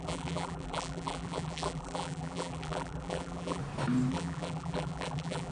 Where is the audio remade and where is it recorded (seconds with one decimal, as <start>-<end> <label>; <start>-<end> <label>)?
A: 0.0-3.6 remade; 3.6-4.1 recorded; 4.1-5.5 remade